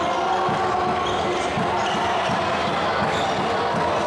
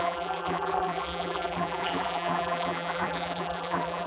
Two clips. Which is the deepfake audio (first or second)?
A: second